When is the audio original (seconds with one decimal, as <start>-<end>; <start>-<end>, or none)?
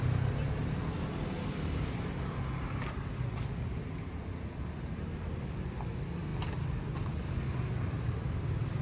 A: 0.0-8.8